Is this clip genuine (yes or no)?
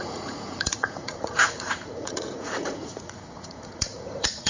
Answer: no